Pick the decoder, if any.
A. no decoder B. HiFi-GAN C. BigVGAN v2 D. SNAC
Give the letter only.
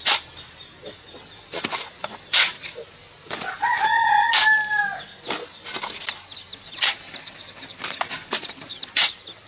A